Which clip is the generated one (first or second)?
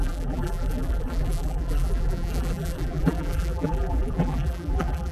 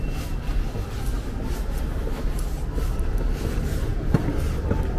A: first